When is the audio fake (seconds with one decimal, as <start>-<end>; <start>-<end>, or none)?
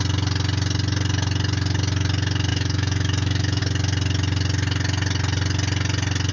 2.5-3.6